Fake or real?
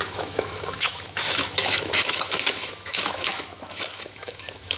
fake